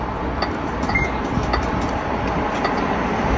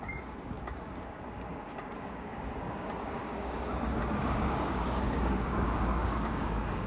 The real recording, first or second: first